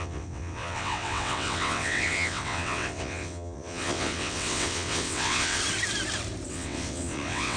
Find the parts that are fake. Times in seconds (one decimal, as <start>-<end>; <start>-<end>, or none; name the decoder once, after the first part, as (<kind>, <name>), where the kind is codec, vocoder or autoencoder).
0.0-5.6 (vocoder, WaveNeXt); 6.5-7.6